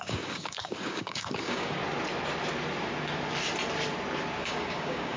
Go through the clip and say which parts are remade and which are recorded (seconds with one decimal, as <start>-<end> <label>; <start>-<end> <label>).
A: 0.0-1.8 remade; 1.8-4.4 recorded; 4.4-5.2 remade